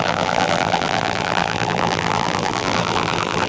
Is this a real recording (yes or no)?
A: no